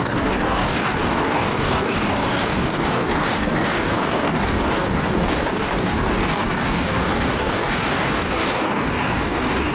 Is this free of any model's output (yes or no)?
no